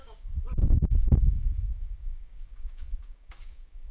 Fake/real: fake